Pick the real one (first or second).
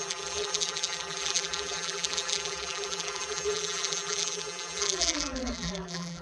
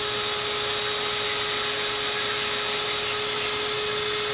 second